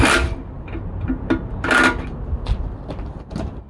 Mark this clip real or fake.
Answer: real